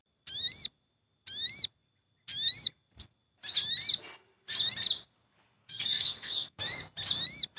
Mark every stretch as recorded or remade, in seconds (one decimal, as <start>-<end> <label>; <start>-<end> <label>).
0.0-5.6 recorded; 5.6-6.6 remade; 6.6-7.6 recorded